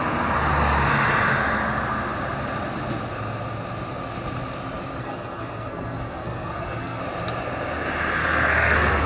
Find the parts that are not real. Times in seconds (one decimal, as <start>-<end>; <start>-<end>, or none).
5.0-7.0; 8.2-9.1